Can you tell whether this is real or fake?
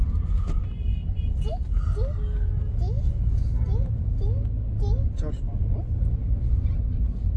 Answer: real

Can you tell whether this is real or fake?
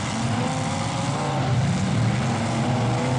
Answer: real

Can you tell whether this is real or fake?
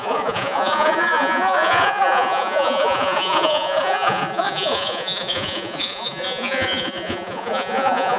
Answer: fake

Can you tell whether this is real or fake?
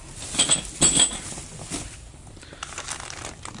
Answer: real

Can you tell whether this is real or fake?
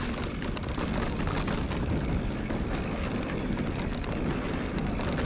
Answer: real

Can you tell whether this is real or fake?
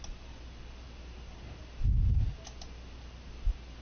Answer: real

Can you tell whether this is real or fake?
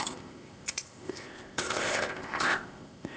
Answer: fake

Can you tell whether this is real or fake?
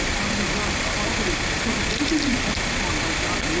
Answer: real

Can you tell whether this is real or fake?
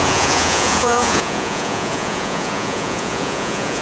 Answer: fake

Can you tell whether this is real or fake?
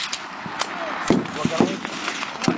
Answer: real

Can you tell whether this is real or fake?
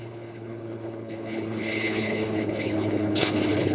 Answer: fake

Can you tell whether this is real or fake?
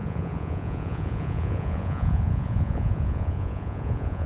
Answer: fake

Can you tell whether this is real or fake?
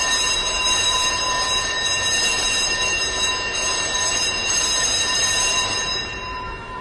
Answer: fake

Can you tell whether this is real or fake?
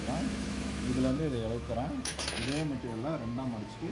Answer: fake